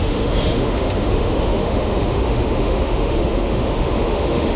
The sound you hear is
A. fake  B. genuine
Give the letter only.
A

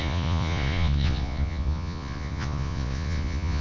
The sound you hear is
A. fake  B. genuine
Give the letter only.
A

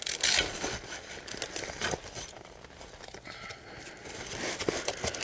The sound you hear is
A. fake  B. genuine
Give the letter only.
B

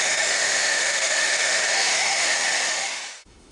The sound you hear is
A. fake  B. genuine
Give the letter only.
A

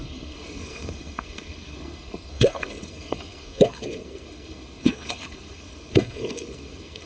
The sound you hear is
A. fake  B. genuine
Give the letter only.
A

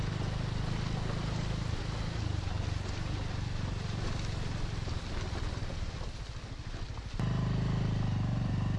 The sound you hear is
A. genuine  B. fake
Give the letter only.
A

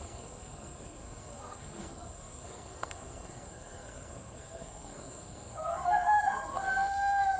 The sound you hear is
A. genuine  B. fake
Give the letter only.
B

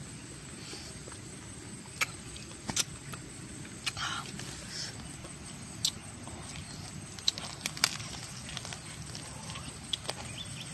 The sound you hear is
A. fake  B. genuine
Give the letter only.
B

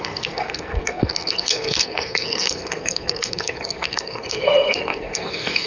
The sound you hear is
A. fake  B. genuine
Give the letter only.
A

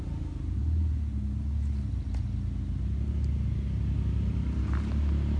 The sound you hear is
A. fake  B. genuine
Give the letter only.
B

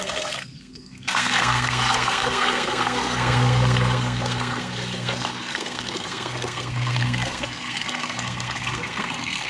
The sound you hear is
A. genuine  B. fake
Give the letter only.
B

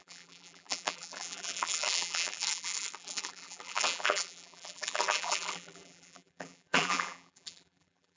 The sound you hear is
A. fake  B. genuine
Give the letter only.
A